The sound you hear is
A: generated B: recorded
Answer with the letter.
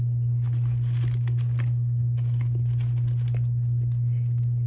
B